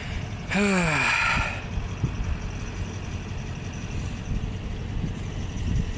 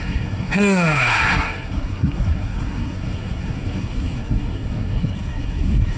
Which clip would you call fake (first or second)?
second